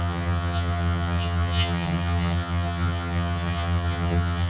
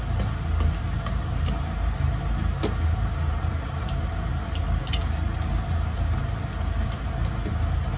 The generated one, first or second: first